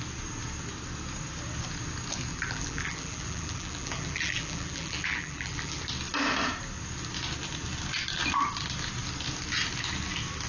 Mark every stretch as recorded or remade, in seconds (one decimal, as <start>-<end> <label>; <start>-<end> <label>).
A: 0.0-2.3 recorded; 2.3-5.8 remade; 5.8-10.5 recorded